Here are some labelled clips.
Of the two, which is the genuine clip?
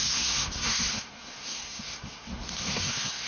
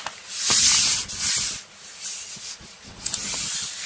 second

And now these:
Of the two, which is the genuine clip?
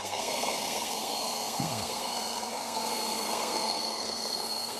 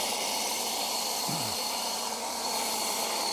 second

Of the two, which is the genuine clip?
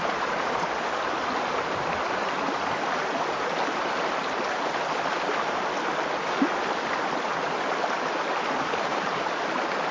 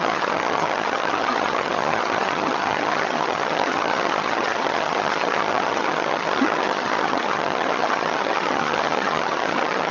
first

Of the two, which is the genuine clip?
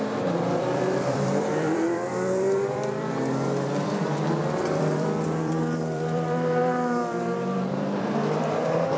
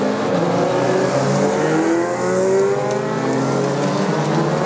second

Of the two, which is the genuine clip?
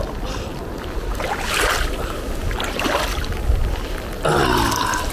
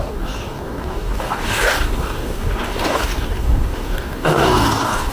first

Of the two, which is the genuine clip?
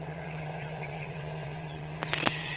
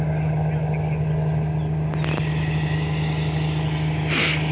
second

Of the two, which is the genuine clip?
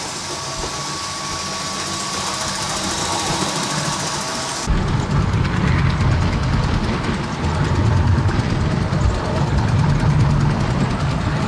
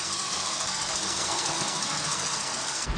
first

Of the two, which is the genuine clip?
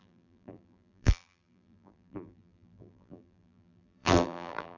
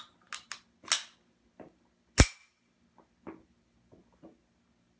second